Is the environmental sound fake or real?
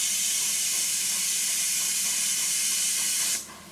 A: real